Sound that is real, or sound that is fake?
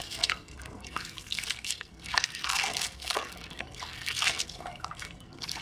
fake